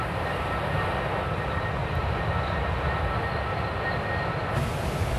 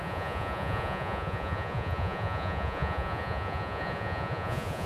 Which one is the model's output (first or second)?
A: second